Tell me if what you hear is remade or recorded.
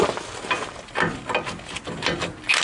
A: recorded